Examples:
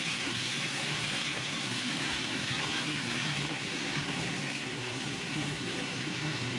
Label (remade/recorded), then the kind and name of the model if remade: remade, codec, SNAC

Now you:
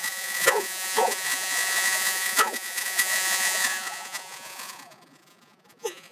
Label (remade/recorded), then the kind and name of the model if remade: remade, vocoder, Vocos